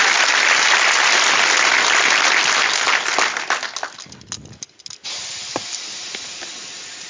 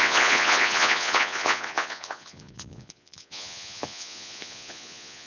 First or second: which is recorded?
first